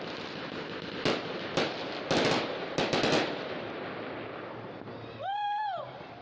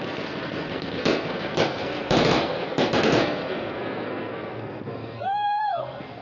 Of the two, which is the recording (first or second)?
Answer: first